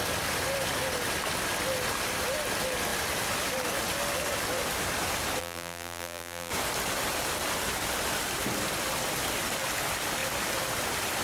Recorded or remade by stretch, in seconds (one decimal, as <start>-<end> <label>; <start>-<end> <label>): 0.0-5.4 recorded; 5.4-6.5 remade; 6.5-11.2 recorded